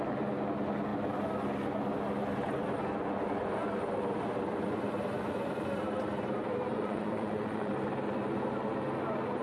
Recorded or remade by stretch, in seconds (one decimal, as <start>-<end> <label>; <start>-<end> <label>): 0.0-6.7 recorded; 6.7-7.7 remade; 7.7-9.4 recorded